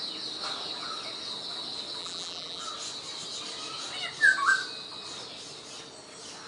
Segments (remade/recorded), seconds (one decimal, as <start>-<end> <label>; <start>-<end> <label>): 0.0-2.0 recorded; 2.0-2.6 remade; 2.6-6.5 recorded